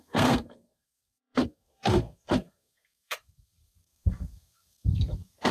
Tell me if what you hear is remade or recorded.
remade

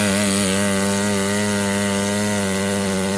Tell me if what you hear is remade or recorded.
recorded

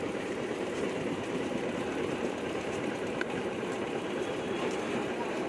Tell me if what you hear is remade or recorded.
remade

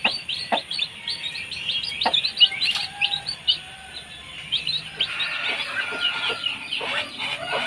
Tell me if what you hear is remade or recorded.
remade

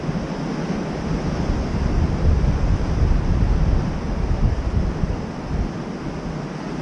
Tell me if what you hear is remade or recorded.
recorded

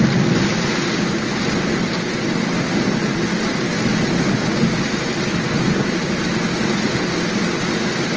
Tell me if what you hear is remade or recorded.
recorded